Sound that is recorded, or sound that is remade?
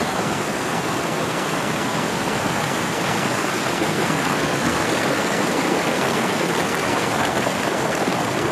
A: remade